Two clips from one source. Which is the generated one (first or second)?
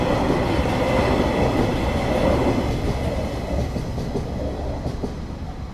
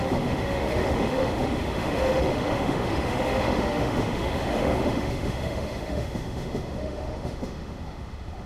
second